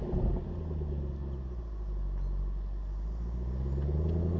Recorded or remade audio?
recorded